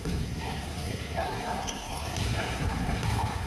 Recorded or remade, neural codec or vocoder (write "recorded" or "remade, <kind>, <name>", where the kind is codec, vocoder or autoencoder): remade, codec, SNAC